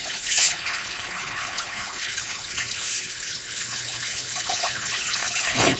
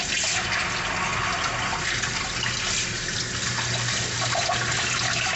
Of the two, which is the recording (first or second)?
second